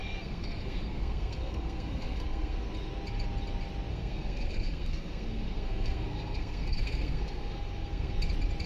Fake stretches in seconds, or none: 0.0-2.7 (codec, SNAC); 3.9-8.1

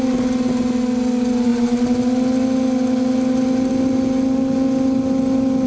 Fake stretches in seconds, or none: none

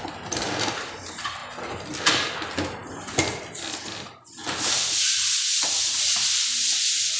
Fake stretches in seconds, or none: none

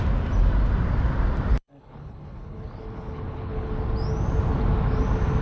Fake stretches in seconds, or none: 1.5-3.7 (codec, HILCodec)

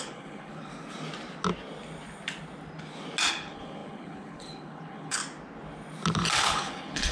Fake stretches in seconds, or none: 0.0-0.7 (codec, HILCodec); 3.3-5.2; 6.4-7.1

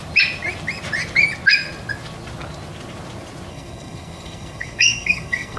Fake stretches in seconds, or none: 3.5-5.6 (codec, SNAC)